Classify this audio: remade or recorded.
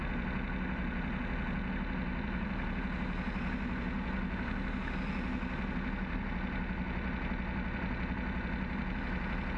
recorded